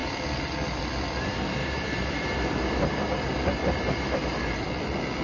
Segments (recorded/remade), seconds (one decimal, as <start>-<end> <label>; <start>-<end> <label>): 0.0-1.6 recorded; 1.6-4.7 remade; 4.7-5.2 recorded